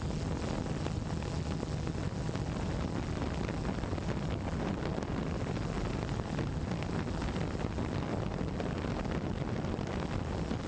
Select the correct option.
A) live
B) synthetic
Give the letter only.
A